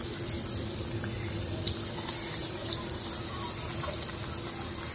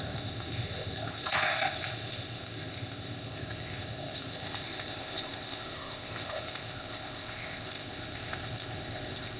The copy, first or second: second